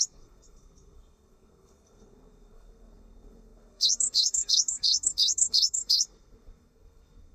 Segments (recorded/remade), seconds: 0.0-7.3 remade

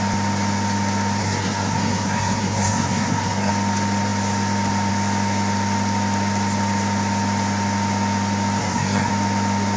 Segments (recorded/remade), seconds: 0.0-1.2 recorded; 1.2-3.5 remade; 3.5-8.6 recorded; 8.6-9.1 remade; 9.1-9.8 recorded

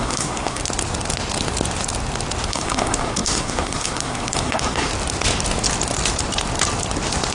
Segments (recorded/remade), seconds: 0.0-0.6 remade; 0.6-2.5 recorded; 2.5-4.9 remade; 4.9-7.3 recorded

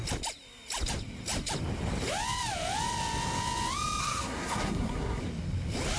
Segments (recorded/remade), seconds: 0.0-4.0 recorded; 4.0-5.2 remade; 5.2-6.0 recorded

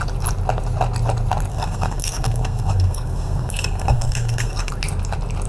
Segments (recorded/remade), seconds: 0.0-1.5 recorded; 1.5-4.7 remade; 4.7-5.5 recorded